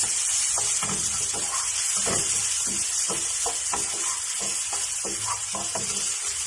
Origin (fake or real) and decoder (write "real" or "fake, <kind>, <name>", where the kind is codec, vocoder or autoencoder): real